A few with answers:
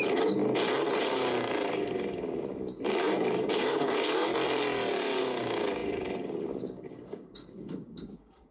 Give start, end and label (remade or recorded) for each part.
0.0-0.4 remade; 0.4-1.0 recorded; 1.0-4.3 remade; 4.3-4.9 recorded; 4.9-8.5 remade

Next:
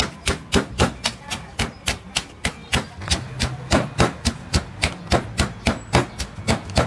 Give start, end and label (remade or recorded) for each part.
0.0-6.9 recorded

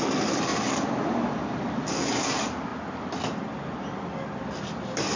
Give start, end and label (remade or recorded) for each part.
0.0-5.2 recorded